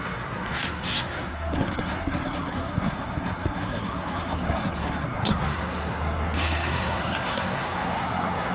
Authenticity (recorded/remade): remade